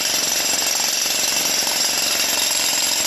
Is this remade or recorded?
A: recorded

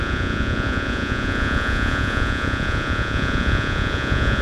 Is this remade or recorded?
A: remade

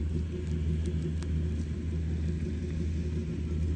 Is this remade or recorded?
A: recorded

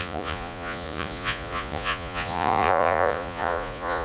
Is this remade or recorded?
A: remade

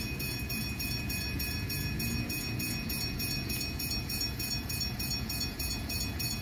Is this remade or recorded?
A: remade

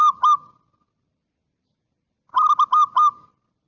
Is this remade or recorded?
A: recorded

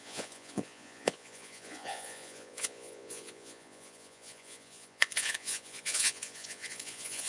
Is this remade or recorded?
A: remade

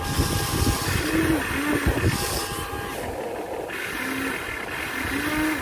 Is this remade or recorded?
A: recorded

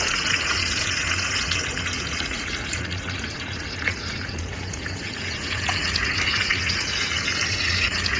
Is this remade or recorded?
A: remade